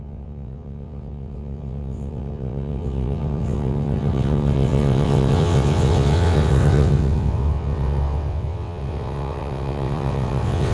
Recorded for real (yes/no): no